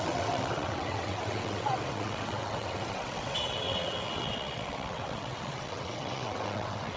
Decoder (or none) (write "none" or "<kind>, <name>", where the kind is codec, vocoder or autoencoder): vocoder, WaveNeXt